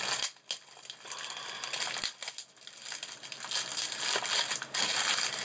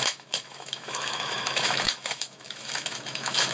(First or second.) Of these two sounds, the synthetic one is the second